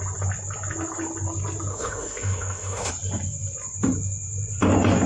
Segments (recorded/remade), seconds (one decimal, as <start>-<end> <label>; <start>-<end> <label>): 0.0-1.7 recorded; 1.7-2.9 remade; 2.9-5.1 recorded